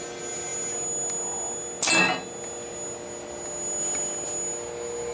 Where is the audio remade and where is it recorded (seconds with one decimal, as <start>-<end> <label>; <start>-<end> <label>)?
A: 0.0-5.1 recorded